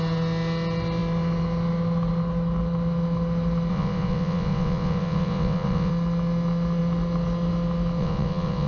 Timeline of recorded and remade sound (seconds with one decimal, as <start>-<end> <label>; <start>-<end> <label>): 0.0-3.7 recorded; 3.7-5.9 remade; 5.9-8.0 recorded; 8.0-8.7 remade